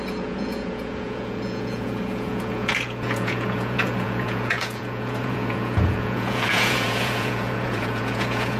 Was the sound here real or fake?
fake